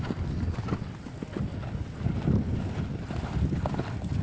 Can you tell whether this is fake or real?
real